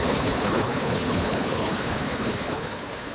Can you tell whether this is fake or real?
fake